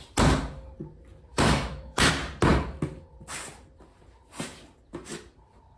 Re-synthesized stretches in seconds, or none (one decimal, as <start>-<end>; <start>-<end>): 1.3-2.1